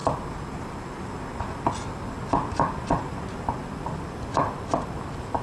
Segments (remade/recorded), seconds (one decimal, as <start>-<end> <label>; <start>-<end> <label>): 0.0-5.4 recorded

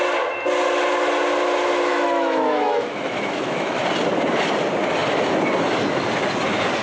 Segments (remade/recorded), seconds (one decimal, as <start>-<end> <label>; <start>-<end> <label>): 0.0-1.9 recorded; 1.9-3.8 remade; 3.8-6.8 recorded

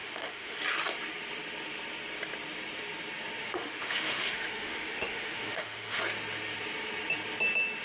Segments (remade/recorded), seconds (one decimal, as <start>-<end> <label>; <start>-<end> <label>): 0.0-0.6 remade; 0.6-3.4 recorded; 3.4-6.0 remade; 6.0-7.8 recorded

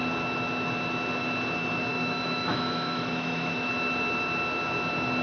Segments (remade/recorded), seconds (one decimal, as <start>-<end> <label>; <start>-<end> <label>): 0.0-1.9 recorded; 1.9-3.7 remade; 3.7-5.2 recorded

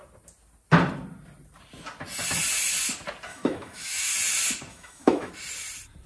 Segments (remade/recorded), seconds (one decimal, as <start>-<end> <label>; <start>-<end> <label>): 0.0-3.3 recorded; 3.3-4.1 remade; 4.1-4.7 recorded; 4.7-5.3 remade; 5.3-6.1 recorded

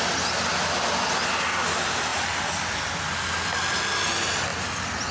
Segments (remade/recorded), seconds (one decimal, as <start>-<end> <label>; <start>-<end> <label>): 0.0-5.1 recorded

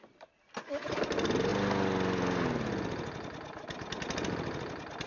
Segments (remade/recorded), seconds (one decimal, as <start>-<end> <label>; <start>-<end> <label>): 0.0-5.1 recorded

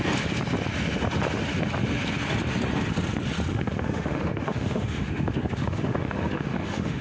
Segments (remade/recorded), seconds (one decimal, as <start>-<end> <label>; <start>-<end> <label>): 0.0-3.5 recorded; 3.5-7.0 remade